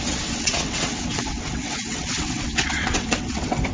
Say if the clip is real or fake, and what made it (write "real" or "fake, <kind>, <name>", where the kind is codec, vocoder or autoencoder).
fake, vocoder, WaveNeXt